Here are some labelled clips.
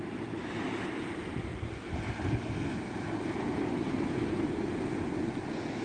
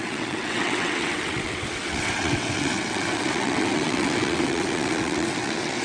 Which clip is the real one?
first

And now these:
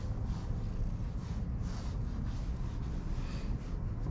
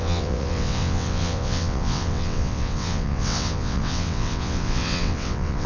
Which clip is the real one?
first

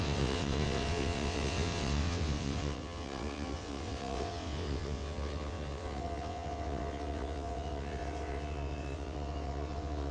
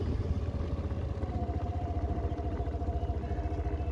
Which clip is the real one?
second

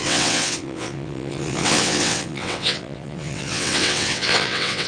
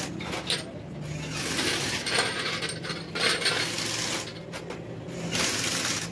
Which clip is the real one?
second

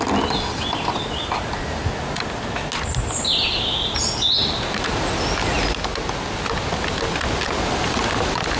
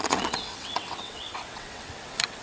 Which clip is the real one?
first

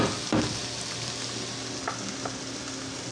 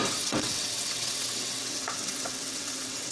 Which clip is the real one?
first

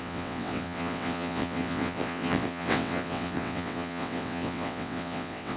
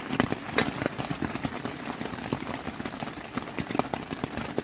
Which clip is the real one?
second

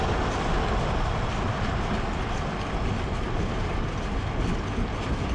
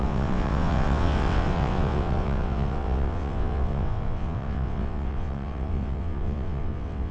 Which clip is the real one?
first